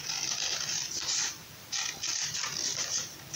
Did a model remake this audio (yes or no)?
no